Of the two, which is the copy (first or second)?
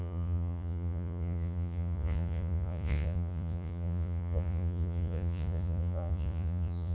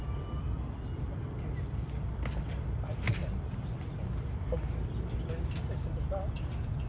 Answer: first